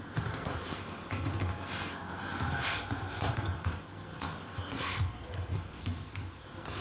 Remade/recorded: remade